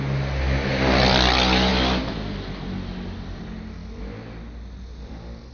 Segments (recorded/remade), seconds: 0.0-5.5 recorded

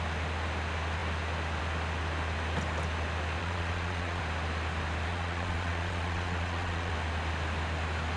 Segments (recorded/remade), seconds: 0.0-3.4 recorded; 3.4-4.2 remade; 4.2-5.1 recorded; 5.1-6.9 remade; 6.9-8.2 recorded

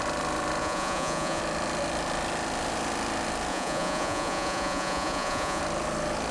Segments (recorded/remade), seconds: 0.0-0.6 recorded; 0.6-1.4 remade; 1.4-3.5 recorded; 3.5-5.6 remade; 5.6-6.3 recorded

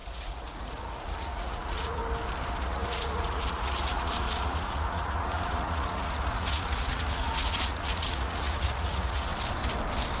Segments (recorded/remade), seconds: 0.0-2.0 remade; 2.0-2.6 recorded; 2.6-9.3 remade; 9.3-10.2 recorded

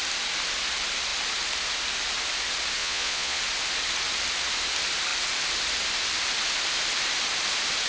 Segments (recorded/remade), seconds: 0.0-2.8 recorded; 2.8-3.4 remade; 3.4-7.9 recorded

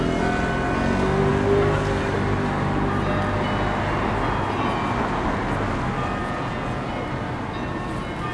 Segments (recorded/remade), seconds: 0.0-6.2 recorded; 6.2-6.9 remade; 6.9-8.3 recorded